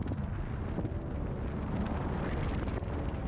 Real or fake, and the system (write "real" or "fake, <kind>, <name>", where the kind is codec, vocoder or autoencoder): real